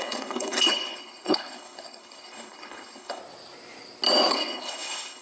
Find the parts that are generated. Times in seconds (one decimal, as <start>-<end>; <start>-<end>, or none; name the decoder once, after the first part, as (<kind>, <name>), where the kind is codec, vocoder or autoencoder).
0.0-3.2 (codec, HILCodec); 4.3-5.2